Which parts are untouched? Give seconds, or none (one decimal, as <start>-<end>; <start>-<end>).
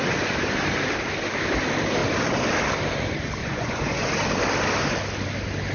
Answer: 0.0-3.4; 4.1-5.7